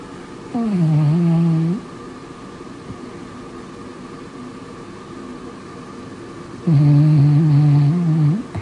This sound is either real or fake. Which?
real